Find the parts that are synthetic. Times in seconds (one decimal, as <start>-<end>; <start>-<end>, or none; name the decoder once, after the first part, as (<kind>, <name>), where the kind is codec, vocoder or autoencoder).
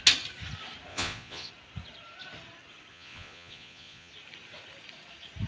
0.9-1.5 (vocoder, Vocos); 2.9-4.1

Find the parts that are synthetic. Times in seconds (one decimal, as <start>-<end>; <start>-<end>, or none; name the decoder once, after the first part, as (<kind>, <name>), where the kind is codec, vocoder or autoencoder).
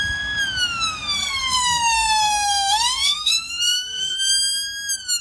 1.2-4.3 (codec, SNAC)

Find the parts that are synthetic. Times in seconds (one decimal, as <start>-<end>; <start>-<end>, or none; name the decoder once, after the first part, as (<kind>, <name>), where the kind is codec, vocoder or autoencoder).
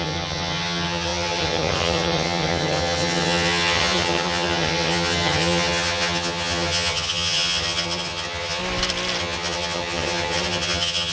0.0-8.6 (vocoder, HiFi-GAN); 9.2-11.1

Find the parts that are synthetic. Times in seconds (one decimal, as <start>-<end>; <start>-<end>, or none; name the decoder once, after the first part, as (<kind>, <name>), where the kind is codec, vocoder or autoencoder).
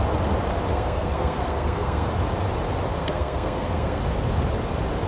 0.7-2.1 (codec, SNAC); 3.0-4.0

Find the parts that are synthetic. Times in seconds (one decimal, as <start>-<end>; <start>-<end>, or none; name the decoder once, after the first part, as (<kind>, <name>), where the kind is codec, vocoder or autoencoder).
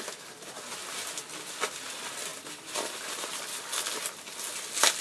none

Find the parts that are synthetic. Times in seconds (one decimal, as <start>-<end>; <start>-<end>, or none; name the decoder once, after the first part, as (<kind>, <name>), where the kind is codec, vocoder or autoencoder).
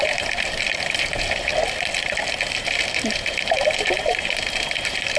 0.0-1.5 (vocoder, BigVGAN v2); 2.3-5.2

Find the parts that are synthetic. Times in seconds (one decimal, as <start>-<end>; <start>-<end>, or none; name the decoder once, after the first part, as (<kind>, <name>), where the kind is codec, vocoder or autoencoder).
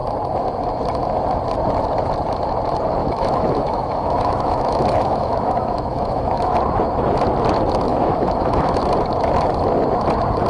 3.0-6.6 (autoencoder, DAC-VAE); 7.9-8.8